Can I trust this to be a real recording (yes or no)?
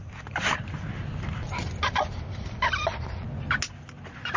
yes